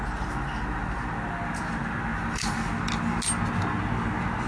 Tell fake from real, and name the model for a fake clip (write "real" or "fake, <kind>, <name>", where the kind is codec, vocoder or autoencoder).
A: real